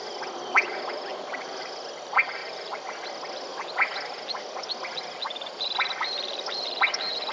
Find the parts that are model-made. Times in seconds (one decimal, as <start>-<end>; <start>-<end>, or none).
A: 1.1-1.7; 2.4-2.9